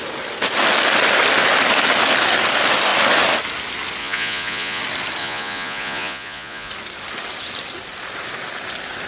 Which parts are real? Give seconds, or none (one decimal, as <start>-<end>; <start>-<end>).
0.0-4.0; 4.8-5.2; 6.7-9.1